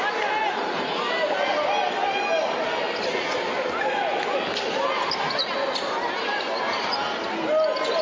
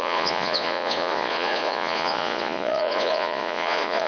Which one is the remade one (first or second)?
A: second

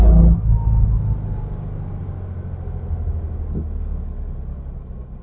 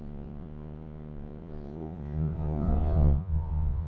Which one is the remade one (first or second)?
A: second